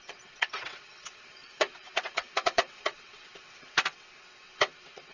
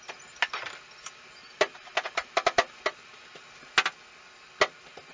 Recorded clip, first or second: second